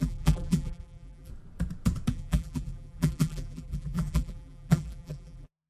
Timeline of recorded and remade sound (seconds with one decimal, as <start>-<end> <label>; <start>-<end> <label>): 0.0-1.3 remade; 1.3-2.1 recorded; 2.1-5.7 remade